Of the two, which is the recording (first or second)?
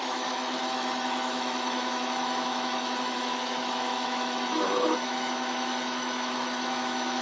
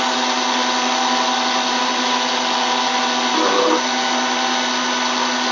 second